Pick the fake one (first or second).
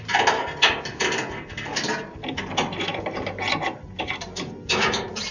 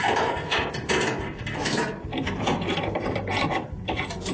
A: second